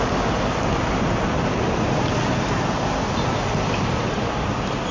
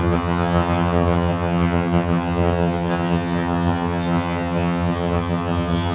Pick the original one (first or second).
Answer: first